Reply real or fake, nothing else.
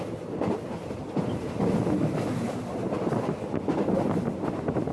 real